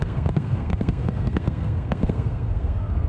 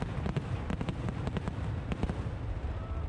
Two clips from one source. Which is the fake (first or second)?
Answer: first